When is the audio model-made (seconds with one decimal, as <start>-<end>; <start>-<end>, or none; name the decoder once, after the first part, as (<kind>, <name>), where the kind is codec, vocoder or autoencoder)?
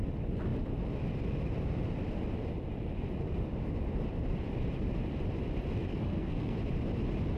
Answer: 5.9-6.6 (codec, SNAC)